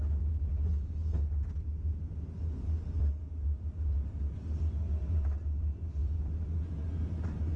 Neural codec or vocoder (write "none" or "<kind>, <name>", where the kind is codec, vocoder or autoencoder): none